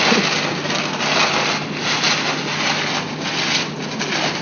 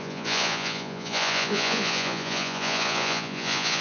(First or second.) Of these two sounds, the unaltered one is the first